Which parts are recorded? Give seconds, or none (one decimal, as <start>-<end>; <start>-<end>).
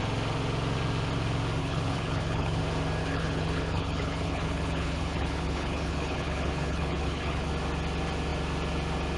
0.0-1.6; 2.6-3.0; 7.5-9.2